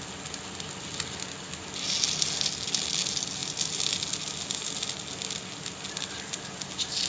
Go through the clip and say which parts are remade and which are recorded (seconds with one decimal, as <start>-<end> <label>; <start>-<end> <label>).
0.0-7.1 recorded